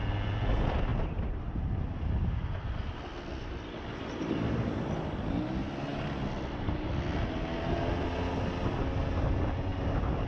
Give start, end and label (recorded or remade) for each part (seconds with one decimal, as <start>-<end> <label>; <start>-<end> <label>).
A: 0.0-10.3 recorded